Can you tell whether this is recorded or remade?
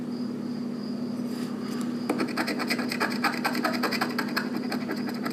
recorded